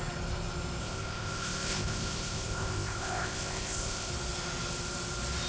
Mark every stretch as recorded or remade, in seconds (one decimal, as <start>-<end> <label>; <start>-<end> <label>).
0.0-0.8 recorded; 0.8-4.1 remade; 4.1-5.5 recorded